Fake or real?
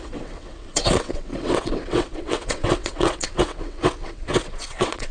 fake